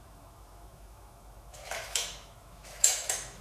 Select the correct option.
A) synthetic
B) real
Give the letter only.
A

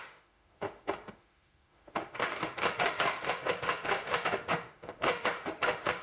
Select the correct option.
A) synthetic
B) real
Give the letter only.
A